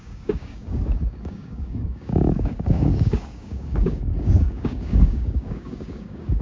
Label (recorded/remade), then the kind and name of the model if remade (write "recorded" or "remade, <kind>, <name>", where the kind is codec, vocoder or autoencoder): remade, codec, DAC